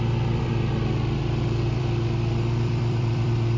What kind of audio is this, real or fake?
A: fake